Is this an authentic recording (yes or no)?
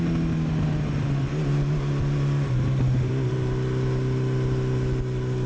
yes